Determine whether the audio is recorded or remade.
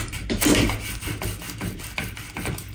recorded